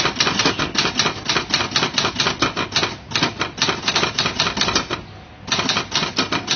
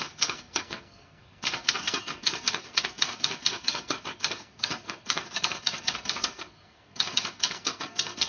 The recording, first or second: first